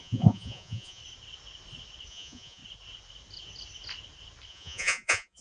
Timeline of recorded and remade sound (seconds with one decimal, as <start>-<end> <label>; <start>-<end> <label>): 0.0-1.0 remade; 1.0-2.1 recorded; 2.1-2.6 remade; 2.6-4.5 recorded; 4.5-5.4 remade